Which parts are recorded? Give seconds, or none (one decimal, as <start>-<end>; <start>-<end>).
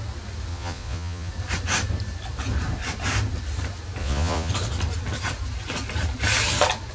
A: 0.0-0.5; 1.3-4.0; 4.5-6.9